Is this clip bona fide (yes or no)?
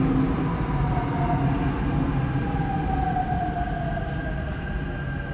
yes